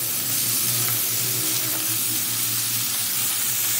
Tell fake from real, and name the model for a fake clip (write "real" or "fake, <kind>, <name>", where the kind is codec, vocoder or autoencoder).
fake, vocoder, BigVGAN v2